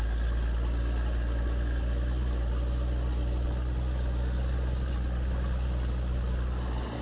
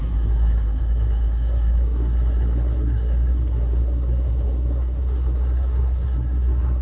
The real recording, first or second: first